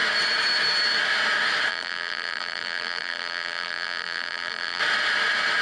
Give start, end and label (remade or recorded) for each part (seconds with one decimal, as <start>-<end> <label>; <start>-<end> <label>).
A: 0.0-1.7 recorded; 1.7-4.8 remade; 4.8-5.6 recorded